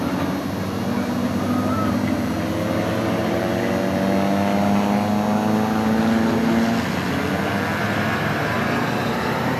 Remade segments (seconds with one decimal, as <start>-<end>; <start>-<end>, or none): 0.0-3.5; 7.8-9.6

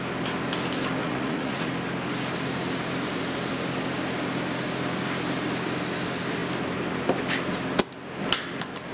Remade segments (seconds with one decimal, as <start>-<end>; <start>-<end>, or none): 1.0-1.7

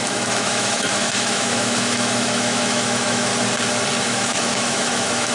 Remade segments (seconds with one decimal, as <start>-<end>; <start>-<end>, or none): 0.0-3.3; 4.0-5.3

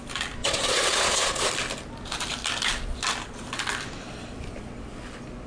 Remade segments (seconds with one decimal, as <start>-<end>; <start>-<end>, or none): 0.4-1.5

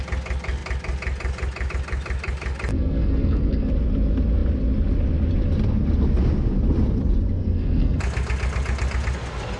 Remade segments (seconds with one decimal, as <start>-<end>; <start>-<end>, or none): 2.7-3.7; 7.4-8.0